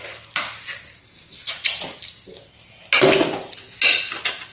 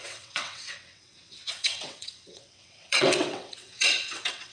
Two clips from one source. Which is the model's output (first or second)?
second